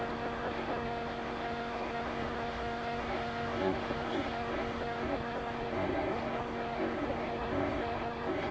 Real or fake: fake